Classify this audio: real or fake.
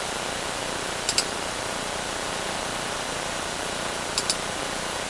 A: real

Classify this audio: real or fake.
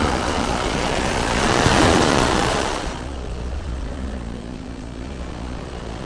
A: fake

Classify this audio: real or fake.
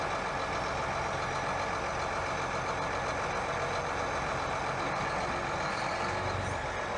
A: real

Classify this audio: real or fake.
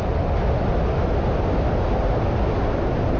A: real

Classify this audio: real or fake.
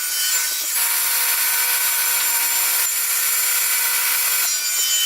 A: real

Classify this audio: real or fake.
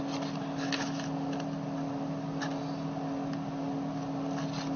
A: real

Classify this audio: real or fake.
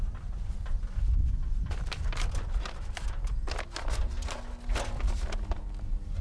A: real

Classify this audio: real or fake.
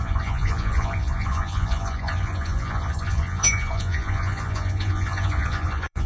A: fake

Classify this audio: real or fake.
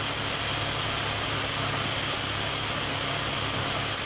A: real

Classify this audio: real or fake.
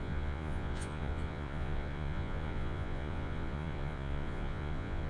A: fake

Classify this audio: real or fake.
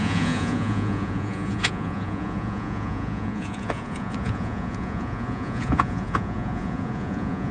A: fake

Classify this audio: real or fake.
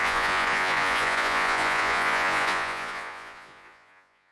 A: fake